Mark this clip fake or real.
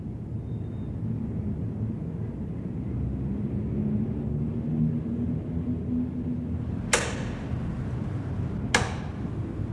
real